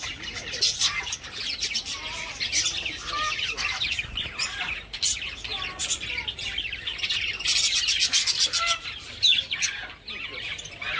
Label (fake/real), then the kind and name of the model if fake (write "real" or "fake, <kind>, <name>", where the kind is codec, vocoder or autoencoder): real